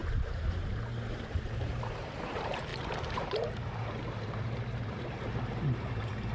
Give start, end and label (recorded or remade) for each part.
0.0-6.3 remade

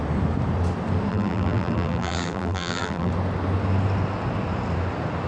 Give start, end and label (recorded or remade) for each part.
0.0-1.1 recorded; 1.1-3.1 remade; 3.1-5.3 recorded

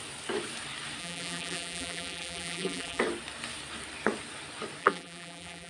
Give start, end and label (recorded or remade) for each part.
0.0-1.0 recorded; 1.0-3.0 remade; 3.0-4.8 recorded; 4.8-5.7 remade

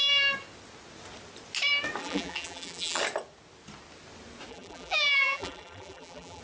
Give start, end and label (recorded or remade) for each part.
0.0-2.0 recorded; 2.0-3.0 remade; 3.0-4.5 recorded; 4.5-6.4 remade

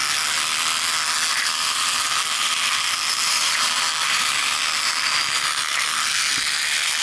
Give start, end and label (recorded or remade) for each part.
0.0-1.3 recorded; 1.3-7.0 remade